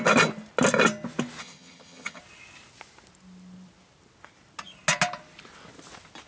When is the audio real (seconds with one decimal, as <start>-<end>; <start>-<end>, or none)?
0.0-1.4; 2.2-6.3